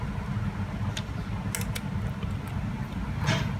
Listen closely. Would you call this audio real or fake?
real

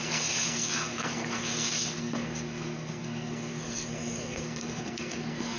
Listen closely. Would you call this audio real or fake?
fake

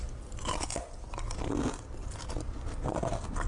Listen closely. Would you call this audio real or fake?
real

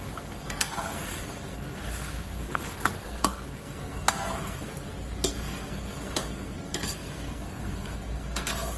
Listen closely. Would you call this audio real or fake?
fake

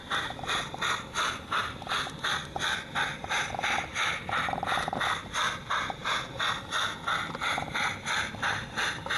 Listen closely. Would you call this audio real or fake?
real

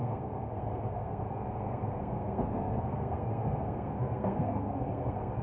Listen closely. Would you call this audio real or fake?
fake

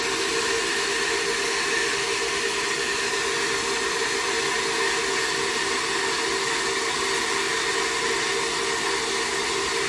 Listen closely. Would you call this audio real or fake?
real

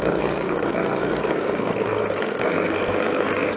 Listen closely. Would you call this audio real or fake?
fake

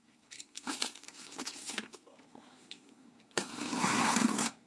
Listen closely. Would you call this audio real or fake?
fake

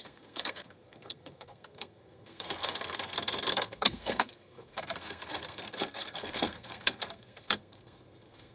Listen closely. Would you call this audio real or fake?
fake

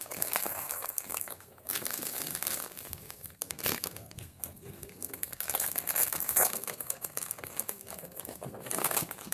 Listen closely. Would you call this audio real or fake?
fake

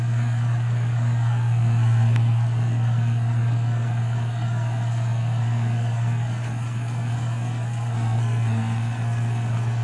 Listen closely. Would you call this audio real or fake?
fake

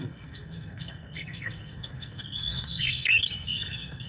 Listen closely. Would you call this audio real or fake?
fake